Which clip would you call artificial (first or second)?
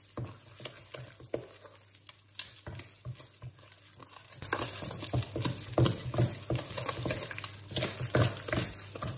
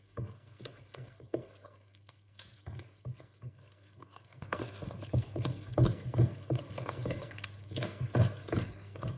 second